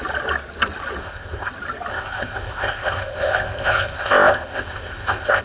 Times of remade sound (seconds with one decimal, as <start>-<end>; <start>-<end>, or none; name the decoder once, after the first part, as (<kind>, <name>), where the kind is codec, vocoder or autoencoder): 1.0-1.5 (codec, ZipCodec); 1.9-5.4